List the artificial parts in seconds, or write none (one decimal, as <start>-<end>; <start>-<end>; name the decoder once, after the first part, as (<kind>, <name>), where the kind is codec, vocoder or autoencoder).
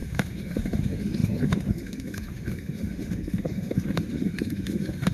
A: 0.0-5.1 (autoencoder, DAC-VAE)